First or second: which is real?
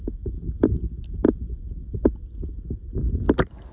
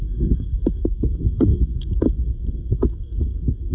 first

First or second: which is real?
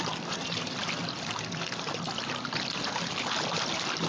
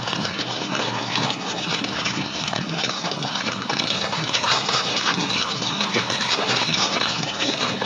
first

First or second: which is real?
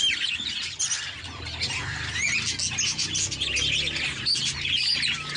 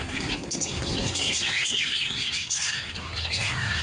first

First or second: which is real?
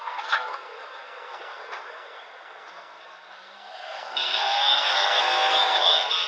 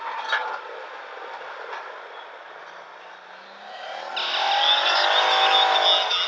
second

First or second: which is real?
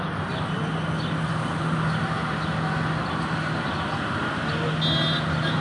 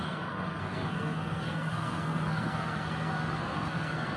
first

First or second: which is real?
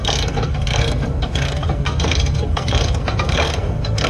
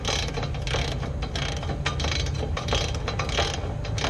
second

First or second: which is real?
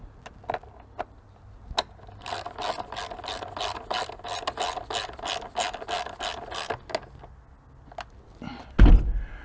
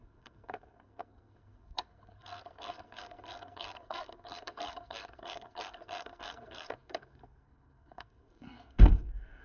first